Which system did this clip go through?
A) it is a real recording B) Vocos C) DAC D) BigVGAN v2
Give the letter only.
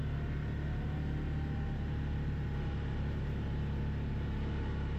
A